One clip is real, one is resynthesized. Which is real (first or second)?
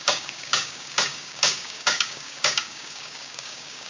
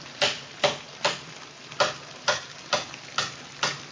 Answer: second